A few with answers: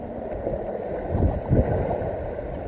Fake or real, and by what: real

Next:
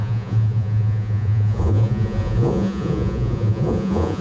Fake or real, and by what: fake, vocoder, Vocos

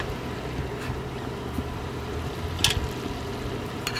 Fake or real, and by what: real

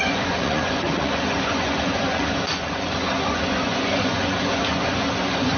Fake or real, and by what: fake, vocoder, Vocos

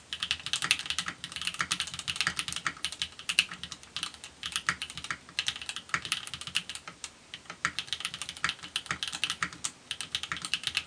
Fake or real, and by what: real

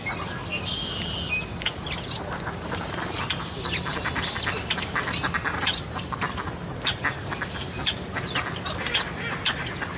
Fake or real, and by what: real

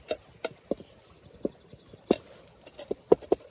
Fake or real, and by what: real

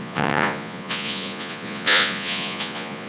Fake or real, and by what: fake, vocoder, Vocos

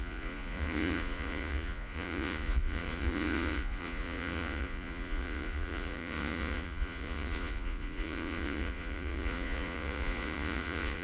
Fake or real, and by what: fake, vocoder, Vocos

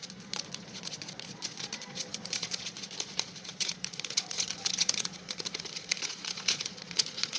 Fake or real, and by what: fake, vocoder, Vocos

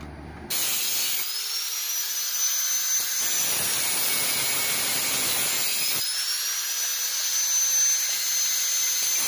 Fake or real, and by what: real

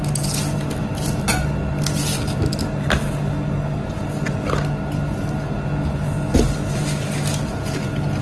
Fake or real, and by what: real